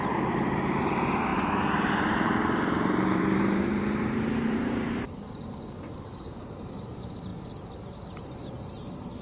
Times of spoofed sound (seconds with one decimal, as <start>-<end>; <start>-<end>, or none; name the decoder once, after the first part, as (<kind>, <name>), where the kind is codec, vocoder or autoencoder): 0.0-1.3 (vocoder, BigVGAN v2); 2.0-7.3; 8.2-9.2